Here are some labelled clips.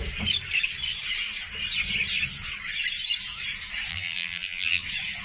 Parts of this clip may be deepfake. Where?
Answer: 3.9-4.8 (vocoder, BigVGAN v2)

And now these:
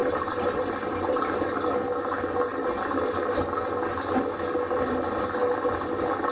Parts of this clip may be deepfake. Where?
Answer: 0.0-1.2 (vocoder, BigVGAN v2)

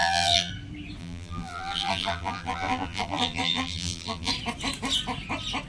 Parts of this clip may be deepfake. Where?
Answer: 0.0-0.5 (vocoder, BigVGAN v2); 1.0-4.3

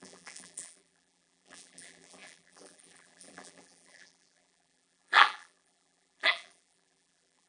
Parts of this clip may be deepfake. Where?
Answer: 0.0-7.5 (vocoder, BigVGAN v2)

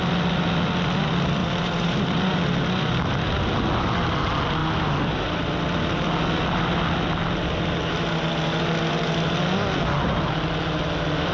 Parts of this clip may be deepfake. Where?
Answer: 1.4-2.2 (vocoder, BigVGAN v2)

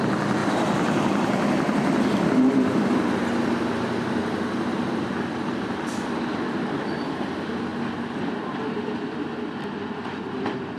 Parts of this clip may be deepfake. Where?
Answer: 0.4-2.9 (vocoder, BigVGAN v2); 4.7-6.8

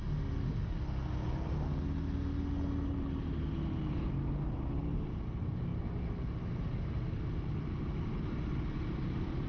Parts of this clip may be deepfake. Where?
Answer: none